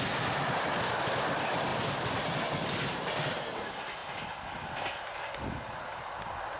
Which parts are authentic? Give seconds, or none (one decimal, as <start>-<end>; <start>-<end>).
0.0-6.6